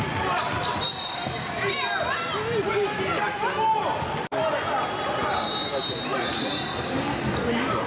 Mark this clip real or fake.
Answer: real